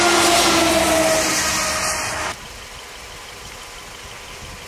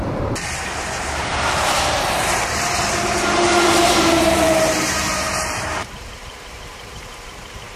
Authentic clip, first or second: first